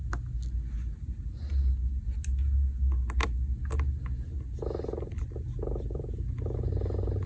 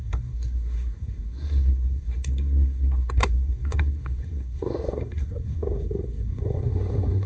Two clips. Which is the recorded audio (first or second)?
first